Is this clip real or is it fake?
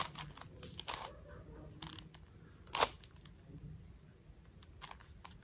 real